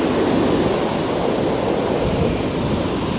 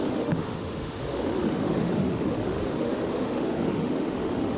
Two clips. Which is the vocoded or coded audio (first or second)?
second